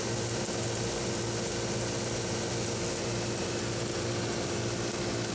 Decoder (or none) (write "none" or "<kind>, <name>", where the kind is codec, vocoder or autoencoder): none